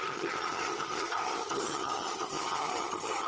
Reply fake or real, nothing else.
fake